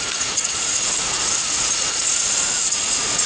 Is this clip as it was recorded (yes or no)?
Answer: no